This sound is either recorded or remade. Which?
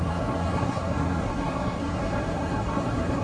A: remade